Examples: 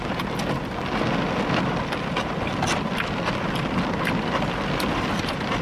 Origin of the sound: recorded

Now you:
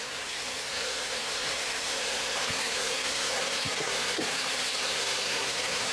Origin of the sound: remade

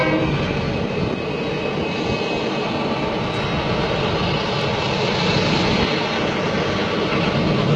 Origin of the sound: recorded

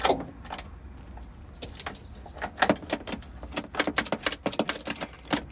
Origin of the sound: recorded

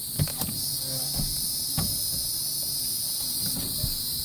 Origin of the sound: recorded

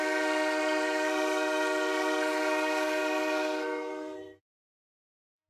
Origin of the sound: remade